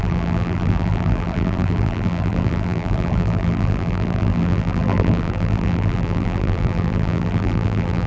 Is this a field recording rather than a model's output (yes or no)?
no